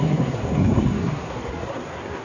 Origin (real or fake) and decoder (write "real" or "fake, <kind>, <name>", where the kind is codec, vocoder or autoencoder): fake, codec, SNAC